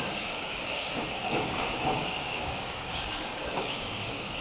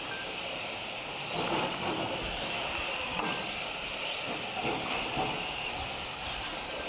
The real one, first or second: second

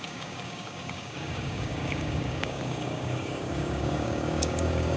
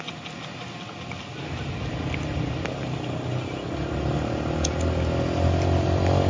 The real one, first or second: second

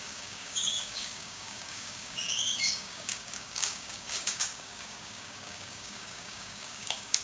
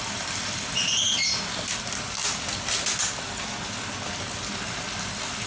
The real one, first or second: second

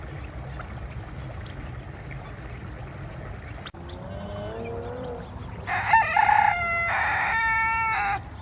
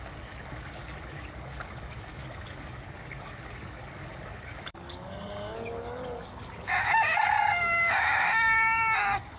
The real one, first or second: first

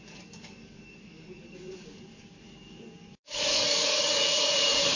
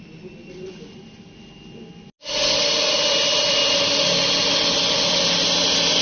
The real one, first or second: second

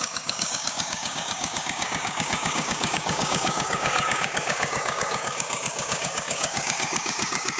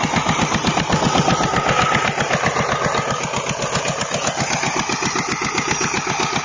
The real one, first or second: second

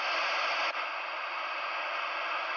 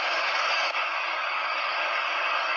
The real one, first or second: first